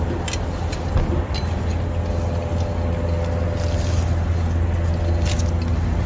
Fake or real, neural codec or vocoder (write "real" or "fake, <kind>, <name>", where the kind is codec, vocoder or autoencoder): real